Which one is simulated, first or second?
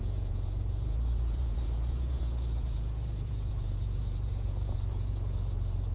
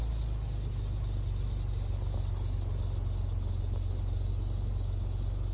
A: first